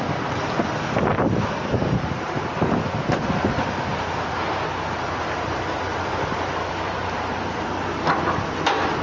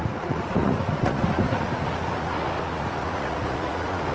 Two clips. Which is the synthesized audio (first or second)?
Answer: second